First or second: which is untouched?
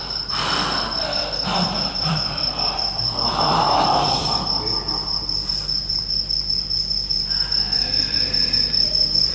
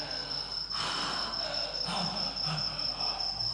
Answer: second